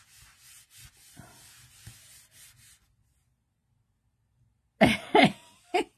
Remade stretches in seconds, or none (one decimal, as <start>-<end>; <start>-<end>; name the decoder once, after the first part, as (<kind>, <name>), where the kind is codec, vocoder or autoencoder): none